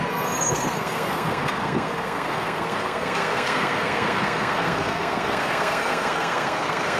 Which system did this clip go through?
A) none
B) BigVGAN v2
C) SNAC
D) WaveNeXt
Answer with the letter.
C